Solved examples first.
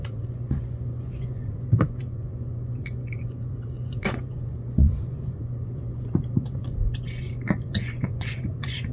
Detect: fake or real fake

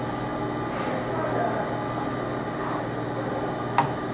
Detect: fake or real real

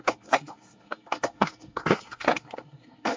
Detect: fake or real fake